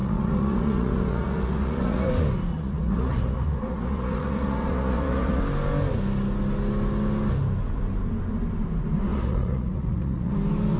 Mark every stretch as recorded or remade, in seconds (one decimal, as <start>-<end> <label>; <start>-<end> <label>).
0.0-2.1 remade; 2.1-2.5 recorded; 2.5-5.4 remade; 5.4-9.1 recorded; 9.1-10.3 remade; 10.3-10.8 recorded